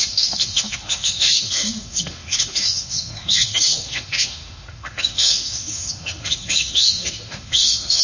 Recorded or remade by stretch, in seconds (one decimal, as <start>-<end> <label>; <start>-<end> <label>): 0.0-8.0 remade